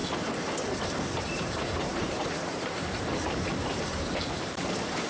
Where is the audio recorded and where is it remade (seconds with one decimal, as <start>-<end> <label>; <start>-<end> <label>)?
0.0-1.4 recorded; 1.4-5.1 remade